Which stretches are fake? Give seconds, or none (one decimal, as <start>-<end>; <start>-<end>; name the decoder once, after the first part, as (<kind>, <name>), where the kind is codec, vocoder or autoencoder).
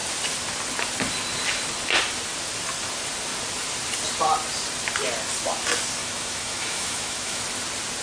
6.0-7.4 (autoencoder, DAC-VAE)